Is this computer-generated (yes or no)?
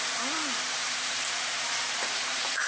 yes